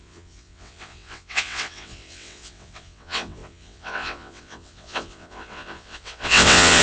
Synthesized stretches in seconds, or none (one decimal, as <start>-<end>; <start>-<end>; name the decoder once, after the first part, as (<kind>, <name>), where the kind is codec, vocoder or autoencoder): 0.0-6.8 (vocoder, WaveNeXt)